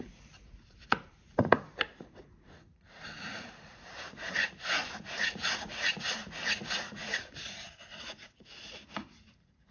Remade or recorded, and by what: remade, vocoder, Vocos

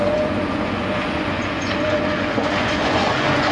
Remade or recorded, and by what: remade, vocoder, Vocos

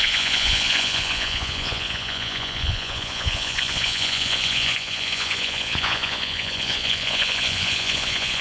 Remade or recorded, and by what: remade, vocoder, Vocos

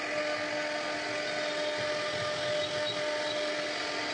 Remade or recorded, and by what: recorded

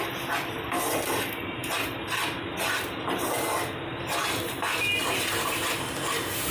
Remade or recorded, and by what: recorded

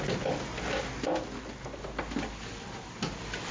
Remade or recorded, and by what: recorded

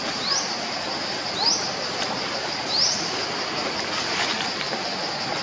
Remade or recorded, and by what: recorded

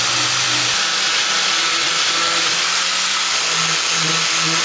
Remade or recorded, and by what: recorded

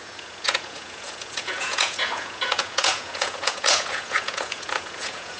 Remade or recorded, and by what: remade, vocoder, Vocos